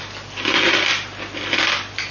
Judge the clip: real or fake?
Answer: real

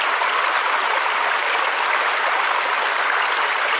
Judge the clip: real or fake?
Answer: real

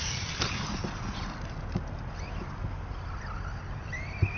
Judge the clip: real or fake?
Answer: real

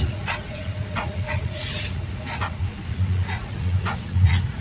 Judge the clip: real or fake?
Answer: fake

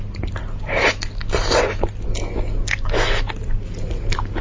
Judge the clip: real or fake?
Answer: real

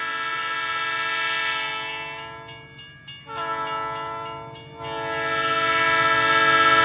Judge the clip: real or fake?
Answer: real